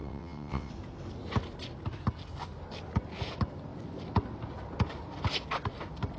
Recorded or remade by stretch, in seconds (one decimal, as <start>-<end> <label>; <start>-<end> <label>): 0.0-0.7 remade; 0.7-6.2 recorded